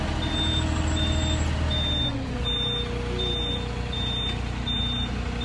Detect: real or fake real